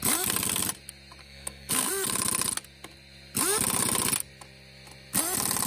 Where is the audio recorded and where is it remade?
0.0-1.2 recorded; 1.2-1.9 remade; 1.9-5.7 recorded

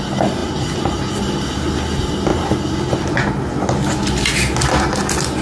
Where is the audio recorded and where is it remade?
0.0-5.4 recorded

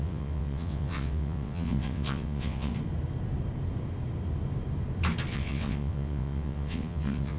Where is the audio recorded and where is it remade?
0.0-2.7 remade; 2.7-5.3 recorded; 5.3-7.4 remade

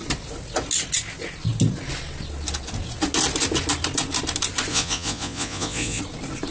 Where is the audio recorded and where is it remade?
0.0-4.7 recorded; 4.7-6.0 remade; 6.0-6.5 recorded

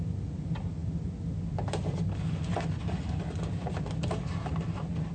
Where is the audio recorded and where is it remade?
0.0-5.1 recorded